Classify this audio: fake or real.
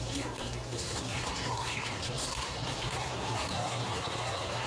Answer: fake